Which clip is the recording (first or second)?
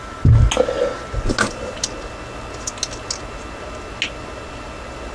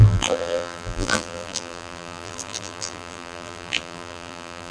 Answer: first